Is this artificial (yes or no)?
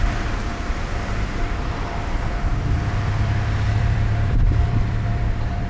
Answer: yes